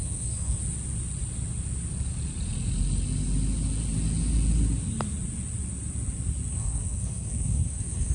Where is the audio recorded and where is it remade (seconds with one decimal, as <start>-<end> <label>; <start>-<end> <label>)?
0.0-0.6 remade; 0.6-6.5 recorded; 6.5-8.1 remade